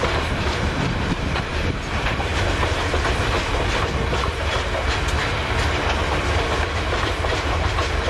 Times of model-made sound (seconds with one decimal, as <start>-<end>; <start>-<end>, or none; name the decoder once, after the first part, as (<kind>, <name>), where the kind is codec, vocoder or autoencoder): 0.0-2.3 (vocoder, BigVGAN v2); 3.2-4.5; 7.1-8.1